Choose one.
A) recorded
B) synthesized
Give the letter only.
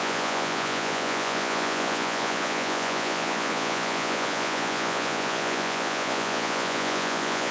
B